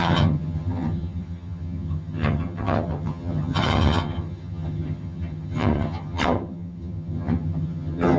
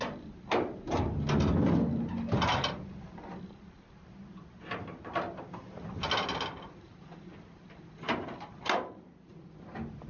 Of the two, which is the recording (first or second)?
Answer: second